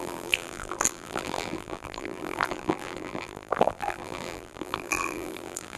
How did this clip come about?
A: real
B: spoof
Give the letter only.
B